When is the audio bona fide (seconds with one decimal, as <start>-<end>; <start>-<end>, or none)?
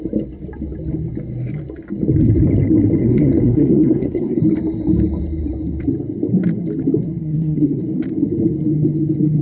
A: 0.0-3.0; 4.4-7.2; 7.8-9.4